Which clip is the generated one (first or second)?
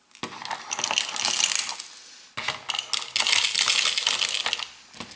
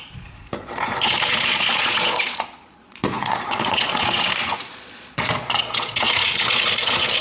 second